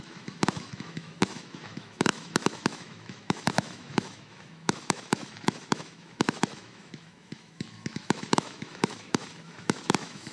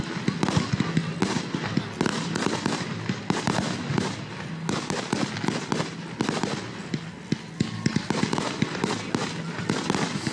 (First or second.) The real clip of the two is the second